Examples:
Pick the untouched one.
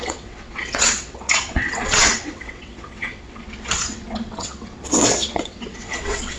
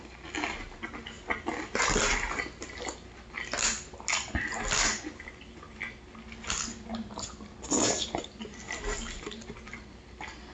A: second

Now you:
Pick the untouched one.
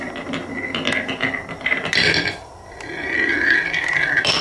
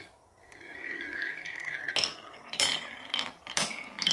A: first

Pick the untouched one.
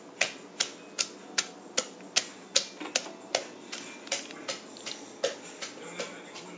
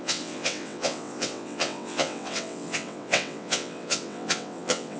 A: first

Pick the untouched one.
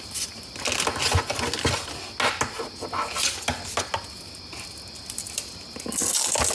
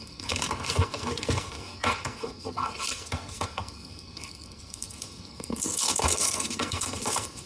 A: first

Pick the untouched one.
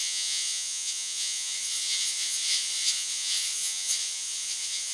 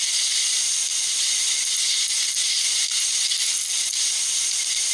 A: second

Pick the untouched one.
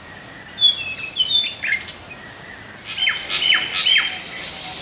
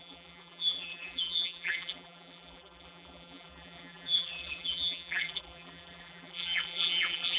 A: first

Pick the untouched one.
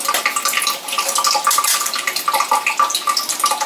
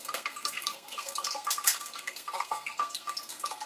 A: first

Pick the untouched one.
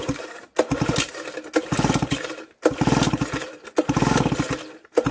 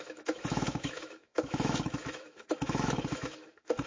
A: first